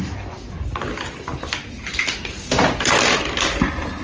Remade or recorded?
recorded